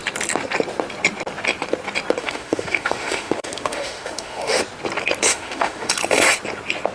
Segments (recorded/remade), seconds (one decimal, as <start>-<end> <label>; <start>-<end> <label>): 0.0-2.2 recorded; 2.2-4.6 remade; 4.6-5.3 recorded; 5.3-5.9 remade; 5.9-6.9 recorded